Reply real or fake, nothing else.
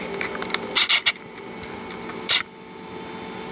real